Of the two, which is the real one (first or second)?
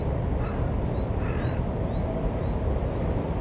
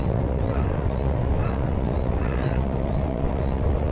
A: first